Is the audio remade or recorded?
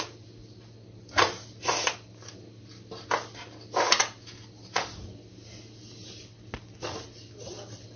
recorded